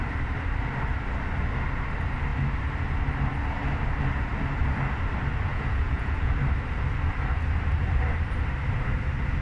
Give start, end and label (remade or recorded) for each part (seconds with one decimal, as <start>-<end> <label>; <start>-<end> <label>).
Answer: 0.0-5.5 recorded; 5.5-6.3 remade; 6.3-9.4 recorded

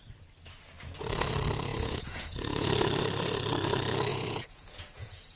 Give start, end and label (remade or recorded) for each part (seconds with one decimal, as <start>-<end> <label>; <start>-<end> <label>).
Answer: 0.0-1.7 recorded; 1.7-2.7 remade; 2.7-4.1 recorded; 4.1-5.4 remade